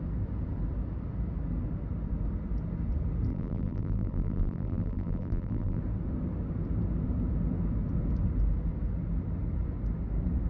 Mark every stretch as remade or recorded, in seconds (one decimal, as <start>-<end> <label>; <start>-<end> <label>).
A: 0.0-3.3 recorded; 3.3-5.8 remade; 5.8-10.5 recorded